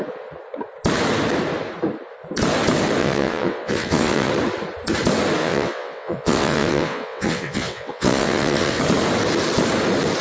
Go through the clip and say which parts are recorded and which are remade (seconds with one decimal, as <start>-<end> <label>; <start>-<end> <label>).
0.0-3.0 recorded; 3.0-4.3 remade; 4.3-5.4 recorded; 5.4-8.8 remade; 8.8-10.2 recorded